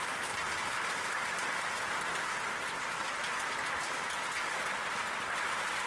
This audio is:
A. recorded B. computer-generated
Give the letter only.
A